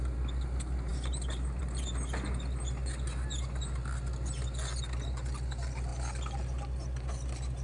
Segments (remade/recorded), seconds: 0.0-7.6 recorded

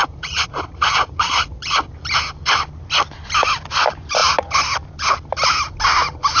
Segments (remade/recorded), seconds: 0.0-1.8 remade; 1.8-6.4 recorded

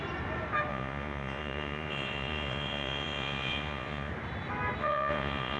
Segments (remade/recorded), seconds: 0.0-0.7 recorded; 0.7-4.1 remade; 4.1-4.8 recorded; 4.8-5.6 remade

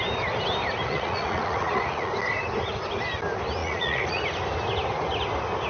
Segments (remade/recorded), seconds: 0.0-0.8 recorded; 0.8-2.1 remade; 2.1-3.6 recorded; 3.6-4.2 remade; 4.2-5.7 recorded

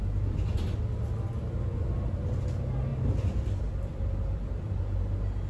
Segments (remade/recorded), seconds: 0.0-2.9 recorded; 2.9-5.0 remade; 5.0-5.5 recorded

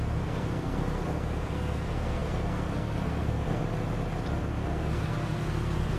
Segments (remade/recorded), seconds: 0.0-3.6 remade; 3.6-4.4 recorded; 4.4-6.0 remade

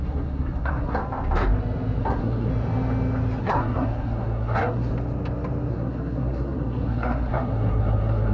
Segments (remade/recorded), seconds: 0.0-1.0 remade; 1.0-2.0 recorded; 2.0-2.5 remade; 2.5-3.4 recorded; 3.4-4.9 remade; 4.9-5.7 recorded; 5.7-8.3 remade

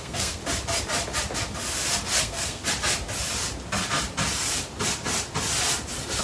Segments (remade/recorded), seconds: 0.0-0.4 remade; 0.4-2.2 recorded; 2.2-2.6 remade; 2.6-6.2 recorded